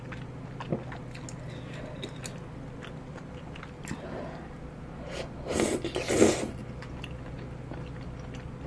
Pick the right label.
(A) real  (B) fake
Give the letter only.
A